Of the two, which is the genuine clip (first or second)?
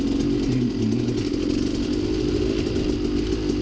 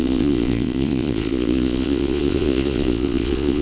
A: first